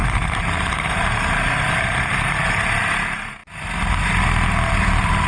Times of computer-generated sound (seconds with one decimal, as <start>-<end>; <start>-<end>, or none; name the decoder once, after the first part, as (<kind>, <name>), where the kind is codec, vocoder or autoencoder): 0.0-3.4 (vocoder, BigVGAN v2)